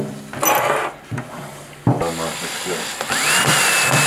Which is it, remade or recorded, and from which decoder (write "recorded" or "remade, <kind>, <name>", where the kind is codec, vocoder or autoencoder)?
recorded